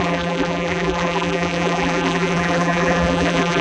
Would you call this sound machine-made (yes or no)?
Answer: yes